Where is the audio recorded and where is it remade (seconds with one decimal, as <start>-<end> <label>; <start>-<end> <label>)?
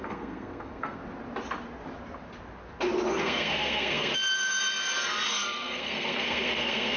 0.0-1.0 remade; 1.0-3.2 recorded; 3.2-4.1 remade; 4.1-5.3 recorded; 5.3-7.0 remade